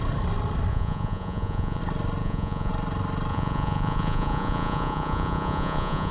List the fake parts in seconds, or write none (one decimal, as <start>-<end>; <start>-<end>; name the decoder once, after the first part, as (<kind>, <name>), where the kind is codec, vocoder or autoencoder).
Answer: 0.7-1.8 (vocoder, Vocos); 2.2-2.7; 3.3-6.1